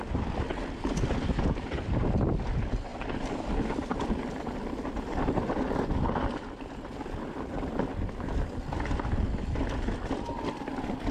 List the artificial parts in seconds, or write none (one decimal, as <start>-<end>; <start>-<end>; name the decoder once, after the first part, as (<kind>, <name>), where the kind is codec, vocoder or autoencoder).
2.9-7.4 (vocoder, BigVGAN v2)